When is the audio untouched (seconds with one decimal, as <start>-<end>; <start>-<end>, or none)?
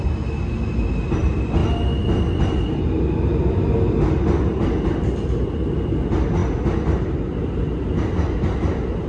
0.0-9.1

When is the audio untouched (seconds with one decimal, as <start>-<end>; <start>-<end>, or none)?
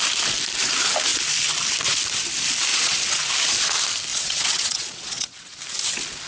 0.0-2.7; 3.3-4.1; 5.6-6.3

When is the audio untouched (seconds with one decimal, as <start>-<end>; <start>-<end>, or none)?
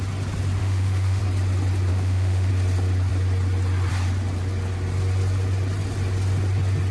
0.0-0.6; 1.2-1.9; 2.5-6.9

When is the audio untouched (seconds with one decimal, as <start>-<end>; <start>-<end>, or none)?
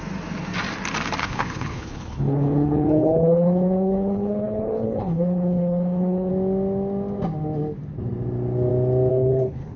0.0-1.2; 6.3-9.1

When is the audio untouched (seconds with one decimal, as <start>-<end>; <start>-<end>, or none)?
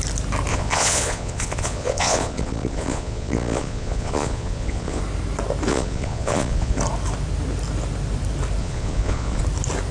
0.0-0.5; 5.0-5.7; 6.8-8.6; 9.4-9.9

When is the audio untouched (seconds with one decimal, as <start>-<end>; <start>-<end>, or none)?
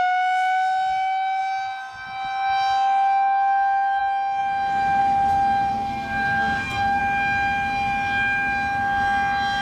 0.0-5.7; 7.0-9.6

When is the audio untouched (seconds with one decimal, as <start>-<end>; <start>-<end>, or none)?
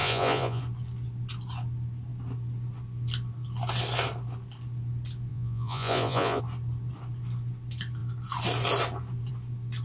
0.6-5.3; 6.4-9.8